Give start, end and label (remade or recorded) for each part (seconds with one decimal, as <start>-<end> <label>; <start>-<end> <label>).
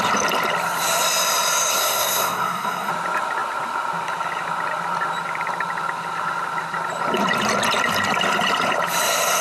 0.0-1.7 recorded; 1.7-2.9 remade; 2.9-9.4 recorded